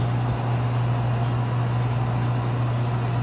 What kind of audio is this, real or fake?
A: real